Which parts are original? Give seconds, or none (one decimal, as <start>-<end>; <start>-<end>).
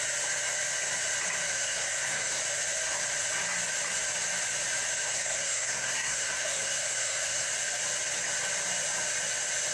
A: 0.0-1.5; 2.4-5.1; 7.5-9.7